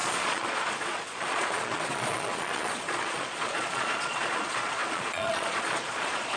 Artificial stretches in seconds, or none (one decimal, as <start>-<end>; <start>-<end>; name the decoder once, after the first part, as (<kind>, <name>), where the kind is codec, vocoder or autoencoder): 0.0-6.4 (vocoder, Vocos)